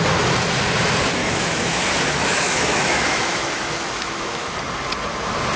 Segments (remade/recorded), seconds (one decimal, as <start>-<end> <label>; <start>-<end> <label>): 0.0-1.2 recorded; 1.2-4.6 remade; 4.6-5.6 recorded